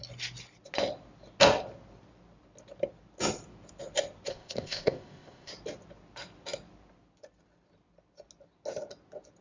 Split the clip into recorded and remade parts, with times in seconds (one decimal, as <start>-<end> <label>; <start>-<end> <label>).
0.0-4.3 recorded; 4.3-5.5 remade; 5.5-9.4 recorded